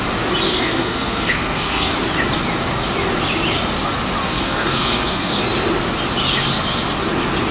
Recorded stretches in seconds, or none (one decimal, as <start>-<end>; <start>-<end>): 0.0-0.5; 1.9-4.2; 5.4-7.5